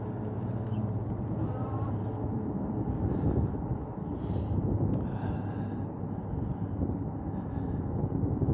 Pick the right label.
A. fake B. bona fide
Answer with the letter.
B